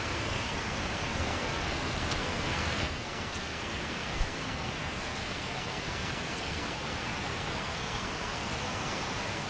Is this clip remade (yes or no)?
yes